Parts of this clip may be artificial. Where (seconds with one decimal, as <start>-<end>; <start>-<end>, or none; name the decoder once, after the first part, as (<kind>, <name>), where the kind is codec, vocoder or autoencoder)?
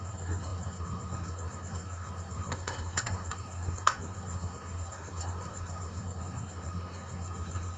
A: 0.0-7.8 (codec, SNAC)